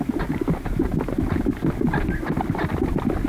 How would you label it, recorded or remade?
recorded